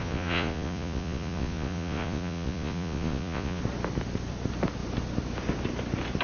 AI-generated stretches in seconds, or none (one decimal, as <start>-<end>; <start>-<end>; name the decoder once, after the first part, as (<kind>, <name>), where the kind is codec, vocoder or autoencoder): 0.0-3.6 (vocoder, Vocos)